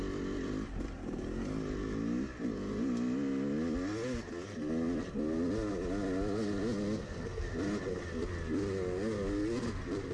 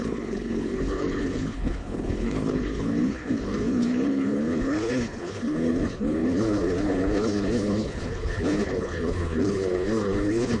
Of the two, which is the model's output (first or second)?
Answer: second